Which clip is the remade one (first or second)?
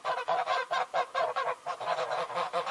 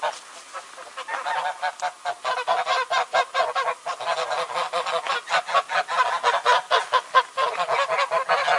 first